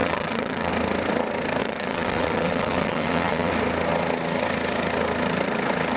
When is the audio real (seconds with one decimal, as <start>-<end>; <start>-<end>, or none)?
0.7-1.6; 3.5-6.0